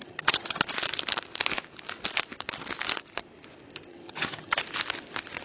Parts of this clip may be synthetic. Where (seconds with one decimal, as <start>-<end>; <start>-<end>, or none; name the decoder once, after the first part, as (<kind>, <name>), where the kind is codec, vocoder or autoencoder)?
0.0-0.6 (vocoder, HiFi-GAN); 3.9-4.6